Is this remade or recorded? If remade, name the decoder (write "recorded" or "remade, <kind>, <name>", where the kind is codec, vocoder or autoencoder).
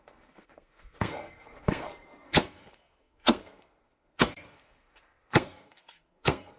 remade, codec, SNAC